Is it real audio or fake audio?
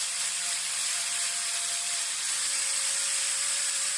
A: fake